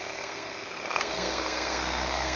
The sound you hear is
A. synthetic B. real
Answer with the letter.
A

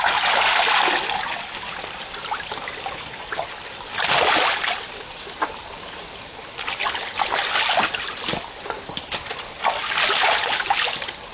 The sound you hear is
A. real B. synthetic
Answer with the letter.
A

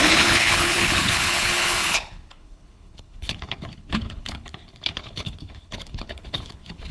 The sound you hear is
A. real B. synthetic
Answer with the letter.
B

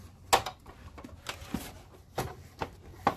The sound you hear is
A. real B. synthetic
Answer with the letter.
A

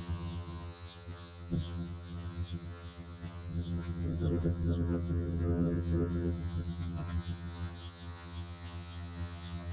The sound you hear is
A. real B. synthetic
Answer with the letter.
B